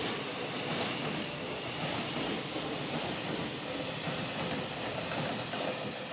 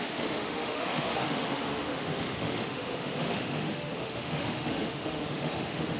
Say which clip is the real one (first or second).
first